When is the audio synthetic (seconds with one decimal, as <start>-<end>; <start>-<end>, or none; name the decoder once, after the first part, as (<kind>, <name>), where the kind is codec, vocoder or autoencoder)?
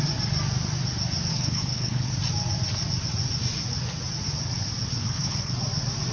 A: 1.3-2.1 (codec, HILCodec); 5.0-5.5